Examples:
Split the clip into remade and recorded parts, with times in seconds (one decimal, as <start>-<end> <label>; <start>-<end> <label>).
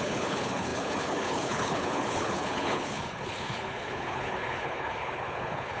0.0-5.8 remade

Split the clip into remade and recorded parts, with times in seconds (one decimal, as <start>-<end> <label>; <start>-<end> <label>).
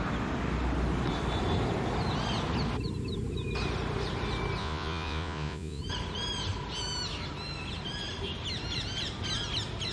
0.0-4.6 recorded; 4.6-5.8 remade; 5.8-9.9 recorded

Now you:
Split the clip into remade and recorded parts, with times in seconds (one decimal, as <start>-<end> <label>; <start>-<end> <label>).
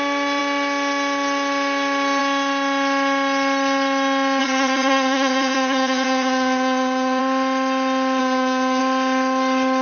0.0-4.4 recorded; 4.4-7.2 remade; 7.2-8.2 recorded; 8.2-8.8 remade; 8.8-9.8 recorded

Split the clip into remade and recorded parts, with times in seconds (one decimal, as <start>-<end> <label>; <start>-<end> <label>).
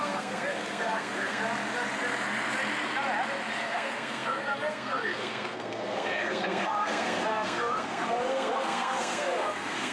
0.0-1.4 remade; 1.4-3.6 recorded; 3.6-9.9 remade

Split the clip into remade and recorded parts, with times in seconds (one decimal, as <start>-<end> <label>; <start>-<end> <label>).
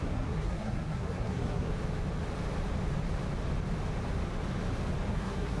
0.0-1.7 remade; 1.7-5.1 recorded; 5.1-5.6 remade